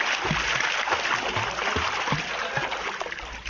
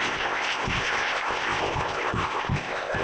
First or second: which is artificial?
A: second